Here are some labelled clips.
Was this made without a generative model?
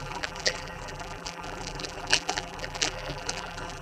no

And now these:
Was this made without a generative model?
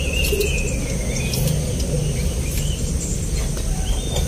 yes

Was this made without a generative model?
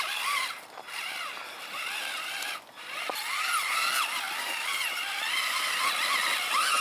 yes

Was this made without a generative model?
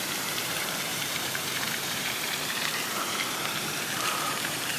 no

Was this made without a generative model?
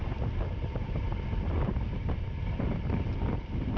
yes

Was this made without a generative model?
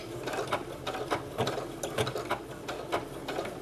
yes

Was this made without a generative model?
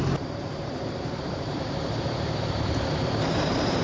no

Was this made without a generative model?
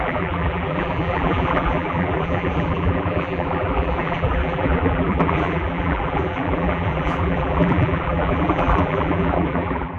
no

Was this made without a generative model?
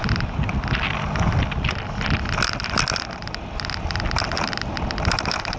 yes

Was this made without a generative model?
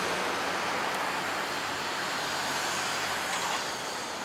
yes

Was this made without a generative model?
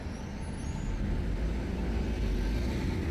yes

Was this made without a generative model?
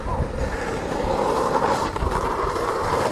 no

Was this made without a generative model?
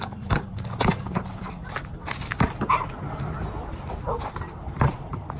no